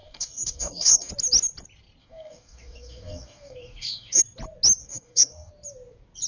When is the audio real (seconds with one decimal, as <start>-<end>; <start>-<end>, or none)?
1.1-2.0; 4.2-4.8; 5.5-6.3